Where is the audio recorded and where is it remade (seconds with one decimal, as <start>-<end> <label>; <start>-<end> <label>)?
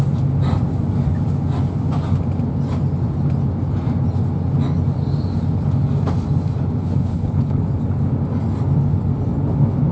0.0-6.8 recorded; 6.8-7.6 remade; 7.6-9.9 recorded